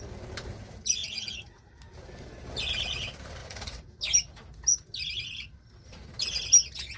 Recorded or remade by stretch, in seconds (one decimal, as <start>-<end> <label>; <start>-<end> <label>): 0.0-1.0 recorded; 1.0-1.8 remade; 1.8-3.4 recorded; 3.4-4.0 remade; 4.0-7.0 recorded